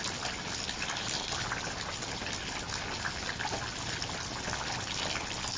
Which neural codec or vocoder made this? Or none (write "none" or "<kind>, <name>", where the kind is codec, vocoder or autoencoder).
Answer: none